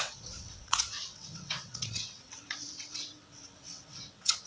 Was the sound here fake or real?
fake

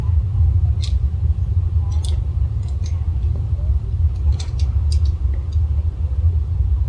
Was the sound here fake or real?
real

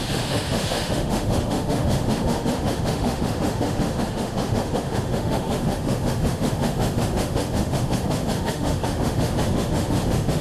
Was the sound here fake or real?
fake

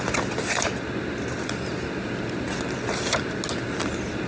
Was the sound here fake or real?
real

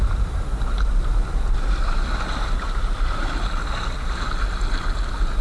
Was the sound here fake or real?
real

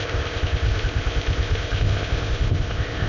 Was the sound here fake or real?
fake